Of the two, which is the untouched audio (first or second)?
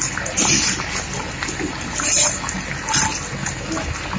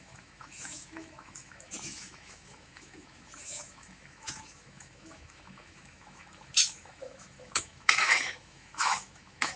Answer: first